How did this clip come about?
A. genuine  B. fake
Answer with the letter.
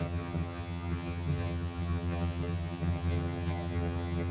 B